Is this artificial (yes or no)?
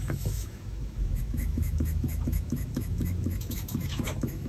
yes